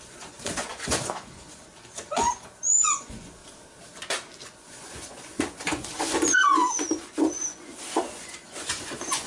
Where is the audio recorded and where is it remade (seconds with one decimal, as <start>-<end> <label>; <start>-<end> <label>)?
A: 0.0-3.4 remade; 3.4-4.4 recorded; 4.4-9.3 remade